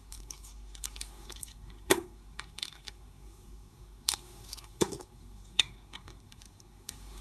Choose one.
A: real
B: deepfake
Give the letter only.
B